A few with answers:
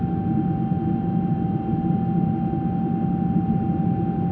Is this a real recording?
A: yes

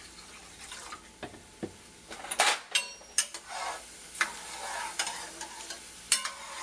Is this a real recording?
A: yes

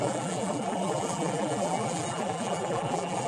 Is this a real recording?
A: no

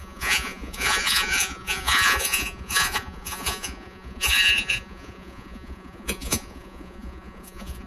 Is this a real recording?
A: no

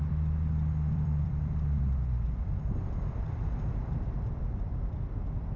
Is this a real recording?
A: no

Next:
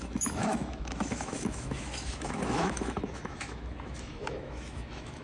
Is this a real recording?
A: no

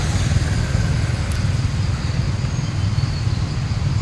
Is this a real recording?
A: yes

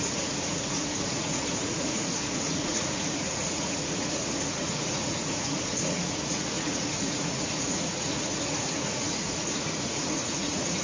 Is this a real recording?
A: no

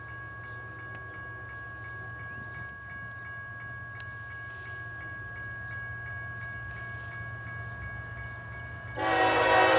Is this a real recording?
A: yes